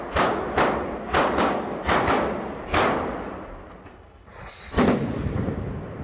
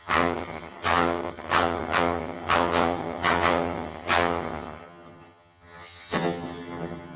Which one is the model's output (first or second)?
second